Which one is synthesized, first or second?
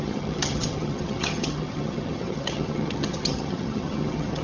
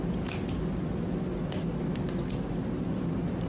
first